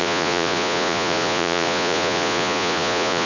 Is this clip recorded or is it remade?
remade